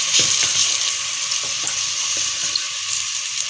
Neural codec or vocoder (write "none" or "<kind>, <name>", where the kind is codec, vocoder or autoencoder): none